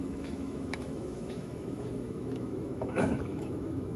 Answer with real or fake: fake